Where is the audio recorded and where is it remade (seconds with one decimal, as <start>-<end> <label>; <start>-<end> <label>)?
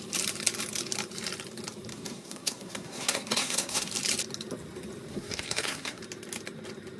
0.0-1.9 recorded; 1.9-3.9 remade; 3.9-5.1 recorded; 5.1-6.0 remade; 6.0-7.0 recorded